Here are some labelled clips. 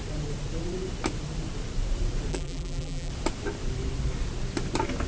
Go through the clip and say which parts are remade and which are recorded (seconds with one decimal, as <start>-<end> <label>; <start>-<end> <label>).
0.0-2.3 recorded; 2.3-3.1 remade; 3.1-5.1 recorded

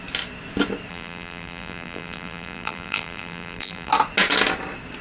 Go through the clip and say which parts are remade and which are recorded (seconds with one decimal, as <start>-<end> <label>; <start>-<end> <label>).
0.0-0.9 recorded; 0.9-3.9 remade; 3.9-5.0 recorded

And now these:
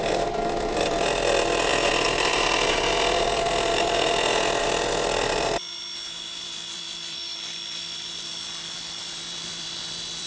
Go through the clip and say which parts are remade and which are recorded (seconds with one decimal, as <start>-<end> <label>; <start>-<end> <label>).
0.0-8.3 remade; 8.3-9.0 recorded; 9.0-10.3 remade

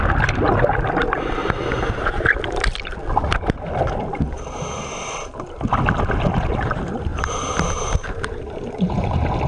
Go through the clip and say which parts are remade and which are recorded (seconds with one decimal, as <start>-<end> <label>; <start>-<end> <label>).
0.0-7.1 recorded; 7.1-9.5 remade